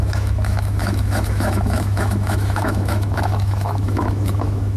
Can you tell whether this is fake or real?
fake